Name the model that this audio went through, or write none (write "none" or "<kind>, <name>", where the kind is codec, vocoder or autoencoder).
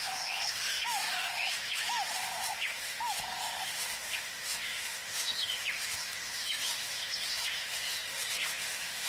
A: autoencoder, DAC-VAE